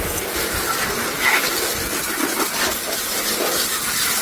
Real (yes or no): yes